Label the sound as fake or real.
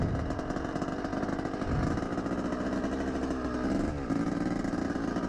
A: real